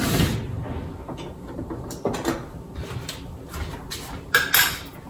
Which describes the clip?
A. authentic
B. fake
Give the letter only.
A